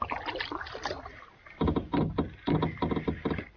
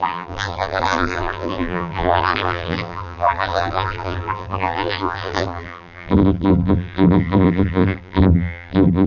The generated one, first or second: second